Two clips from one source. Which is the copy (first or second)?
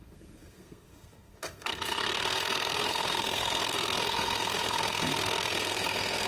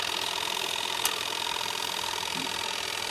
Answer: first